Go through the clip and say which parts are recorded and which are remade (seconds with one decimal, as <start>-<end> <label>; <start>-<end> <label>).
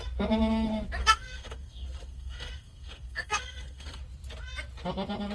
0.0-1.0 recorded; 1.0-4.0 remade; 4.0-5.3 recorded